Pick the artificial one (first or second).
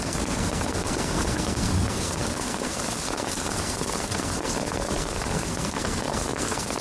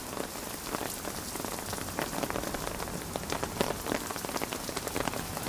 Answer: first